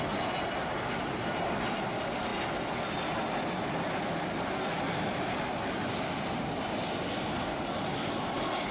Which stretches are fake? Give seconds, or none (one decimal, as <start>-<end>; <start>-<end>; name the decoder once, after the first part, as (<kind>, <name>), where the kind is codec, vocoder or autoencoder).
none